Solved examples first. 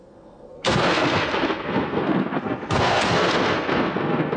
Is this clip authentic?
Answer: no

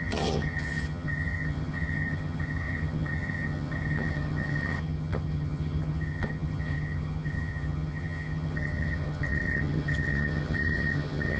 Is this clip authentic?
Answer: no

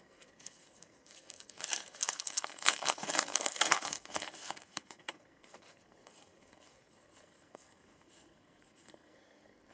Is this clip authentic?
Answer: no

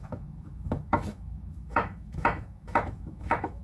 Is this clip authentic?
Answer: no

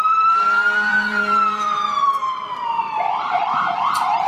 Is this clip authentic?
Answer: no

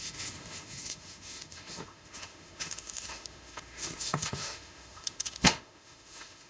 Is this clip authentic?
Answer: no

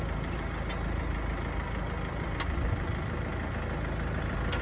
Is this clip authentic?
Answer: yes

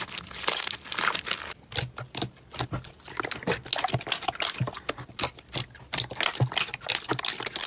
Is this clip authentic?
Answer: yes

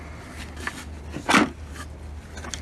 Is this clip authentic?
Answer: yes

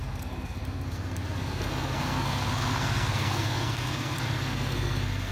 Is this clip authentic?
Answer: no